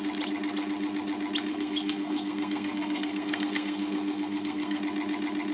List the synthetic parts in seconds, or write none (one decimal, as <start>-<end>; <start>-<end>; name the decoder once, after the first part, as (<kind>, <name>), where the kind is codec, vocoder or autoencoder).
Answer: 1.5-4.8 (codec, SNAC)